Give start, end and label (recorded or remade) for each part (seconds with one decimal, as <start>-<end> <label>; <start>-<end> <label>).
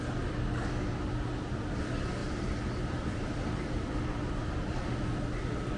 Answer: 0.0-2.2 recorded; 2.2-4.8 remade; 4.8-5.8 recorded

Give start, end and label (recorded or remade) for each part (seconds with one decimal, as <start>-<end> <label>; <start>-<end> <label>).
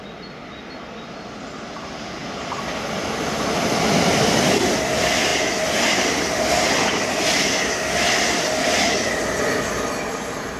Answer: 0.0-10.6 recorded